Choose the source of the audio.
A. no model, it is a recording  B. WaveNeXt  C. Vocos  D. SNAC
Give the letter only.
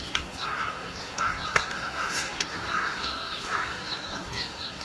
D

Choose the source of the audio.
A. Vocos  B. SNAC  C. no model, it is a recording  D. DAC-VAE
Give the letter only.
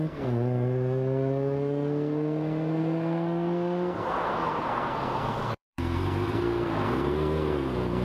B